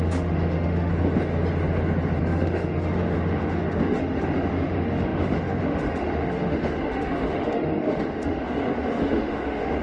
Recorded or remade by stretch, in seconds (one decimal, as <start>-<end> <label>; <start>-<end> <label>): 0.0-0.9 remade; 0.9-2.2 recorded; 2.2-9.8 remade